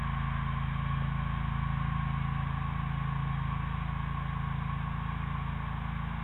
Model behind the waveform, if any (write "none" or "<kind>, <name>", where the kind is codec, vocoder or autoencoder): none